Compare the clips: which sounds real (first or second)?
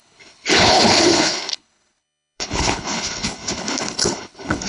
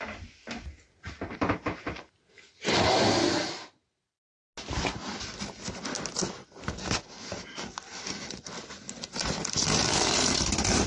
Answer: second